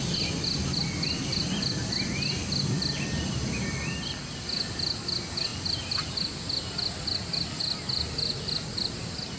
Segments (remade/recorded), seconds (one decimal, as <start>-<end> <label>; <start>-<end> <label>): 0.0-9.4 recorded